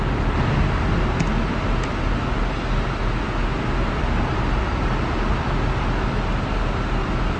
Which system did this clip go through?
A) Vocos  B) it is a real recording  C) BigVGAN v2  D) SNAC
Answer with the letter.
B